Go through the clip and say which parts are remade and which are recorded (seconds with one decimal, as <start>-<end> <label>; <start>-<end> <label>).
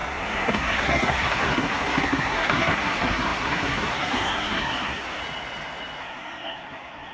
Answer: 0.0-5.2 remade; 5.2-6.0 recorded; 6.0-7.1 remade